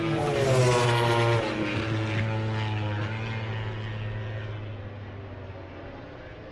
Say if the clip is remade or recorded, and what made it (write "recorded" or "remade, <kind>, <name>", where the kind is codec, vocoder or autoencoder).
recorded